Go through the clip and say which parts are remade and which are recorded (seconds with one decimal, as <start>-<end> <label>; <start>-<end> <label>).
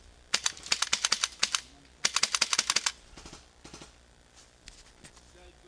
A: 0.0-1.4 remade; 1.4-2.8 recorded; 2.8-5.7 remade